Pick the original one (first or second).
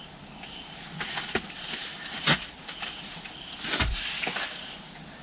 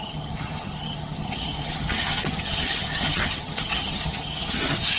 first